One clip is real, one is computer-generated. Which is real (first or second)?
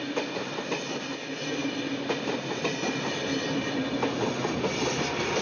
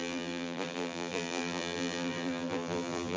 first